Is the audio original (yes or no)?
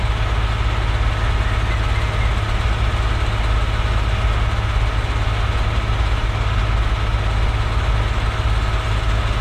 yes